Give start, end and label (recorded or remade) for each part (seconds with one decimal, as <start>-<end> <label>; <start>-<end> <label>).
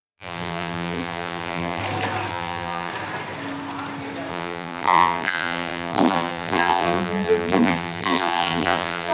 0.0-1.8 remade; 1.8-2.3 recorded; 2.3-2.9 remade; 2.9-4.3 recorded; 4.3-9.1 remade